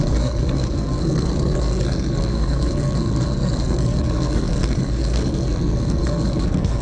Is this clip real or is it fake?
fake